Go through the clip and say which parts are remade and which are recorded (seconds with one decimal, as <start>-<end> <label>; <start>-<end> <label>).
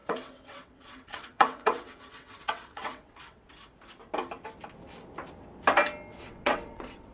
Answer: 0.0-3.5 remade; 3.5-6.1 recorded; 6.1-7.1 remade